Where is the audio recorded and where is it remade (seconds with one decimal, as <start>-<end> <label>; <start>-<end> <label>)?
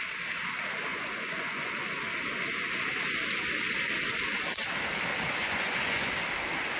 0.0-0.9 recorded; 0.9-1.7 remade; 1.7-5.4 recorded; 5.4-6.1 remade; 6.1-6.8 recorded